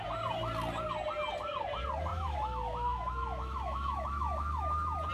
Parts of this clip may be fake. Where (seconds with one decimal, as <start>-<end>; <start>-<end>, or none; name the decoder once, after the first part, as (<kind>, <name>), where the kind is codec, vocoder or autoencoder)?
2.1-5.1 (autoencoder, DAC-VAE)